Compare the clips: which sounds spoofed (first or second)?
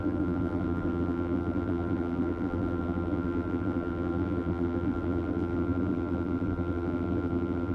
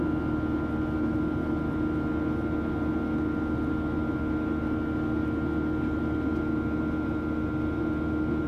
first